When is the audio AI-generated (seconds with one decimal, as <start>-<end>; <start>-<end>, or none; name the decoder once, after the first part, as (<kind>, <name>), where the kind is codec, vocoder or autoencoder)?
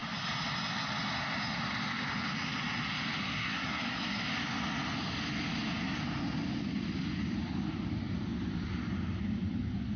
3.2-4.2 (codec, SNAC)